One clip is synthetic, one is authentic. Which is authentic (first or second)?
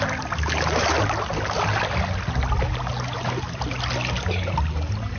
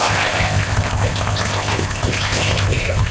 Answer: first